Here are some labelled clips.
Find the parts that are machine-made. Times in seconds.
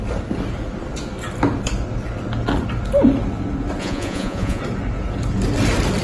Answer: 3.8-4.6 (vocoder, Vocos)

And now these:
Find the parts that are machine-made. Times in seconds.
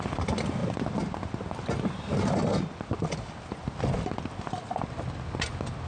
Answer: none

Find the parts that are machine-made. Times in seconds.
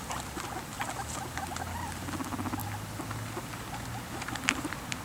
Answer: none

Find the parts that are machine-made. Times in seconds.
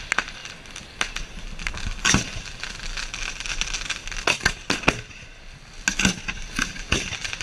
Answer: none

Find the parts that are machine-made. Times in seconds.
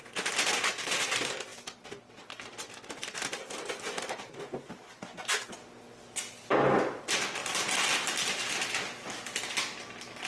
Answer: none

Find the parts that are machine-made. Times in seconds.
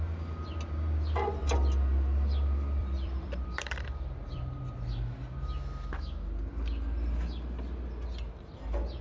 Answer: 2.8-4.6 (vocoder, BigVGAN v2)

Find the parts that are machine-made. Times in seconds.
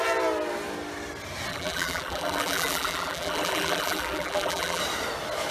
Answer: 1.5-4.8 (vocoder, BigVGAN v2)